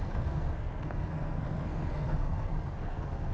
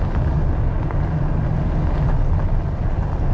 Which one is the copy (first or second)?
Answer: first